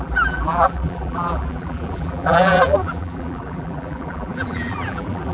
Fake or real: fake